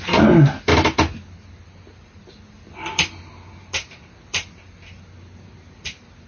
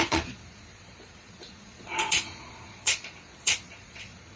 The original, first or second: first